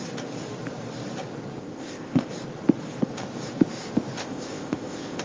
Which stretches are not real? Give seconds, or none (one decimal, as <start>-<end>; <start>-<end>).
1.6-2.3; 4.2-5.2